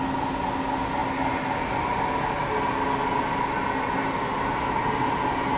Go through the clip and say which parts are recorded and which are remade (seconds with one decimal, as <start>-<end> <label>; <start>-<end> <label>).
0.0-5.6 recorded